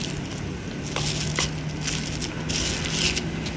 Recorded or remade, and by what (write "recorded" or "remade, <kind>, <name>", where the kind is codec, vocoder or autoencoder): recorded